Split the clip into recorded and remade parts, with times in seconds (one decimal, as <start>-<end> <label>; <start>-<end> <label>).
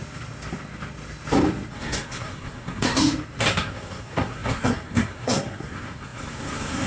0.0-1.7 recorded; 1.7-3.0 remade; 3.0-3.5 recorded; 3.5-6.9 remade